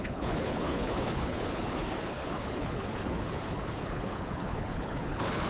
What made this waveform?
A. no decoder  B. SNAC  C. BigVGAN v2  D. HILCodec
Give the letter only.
D